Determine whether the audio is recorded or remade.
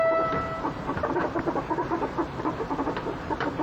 remade